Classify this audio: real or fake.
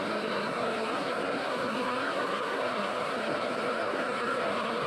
fake